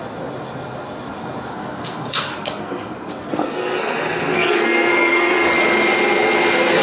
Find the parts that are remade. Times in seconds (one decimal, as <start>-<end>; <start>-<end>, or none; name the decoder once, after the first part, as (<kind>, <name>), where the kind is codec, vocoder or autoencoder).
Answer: 1.5-5.6 (codec, SNAC)